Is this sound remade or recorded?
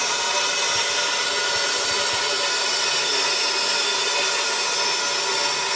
recorded